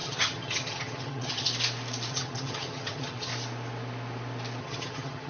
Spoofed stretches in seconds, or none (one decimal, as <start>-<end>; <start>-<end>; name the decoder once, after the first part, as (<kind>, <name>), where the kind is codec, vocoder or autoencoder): 0.0-1.5 (vocoder, HiFi-GAN); 2.1-3.3; 4.6-5.3